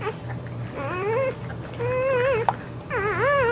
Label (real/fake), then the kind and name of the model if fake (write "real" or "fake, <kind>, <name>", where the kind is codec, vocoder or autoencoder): real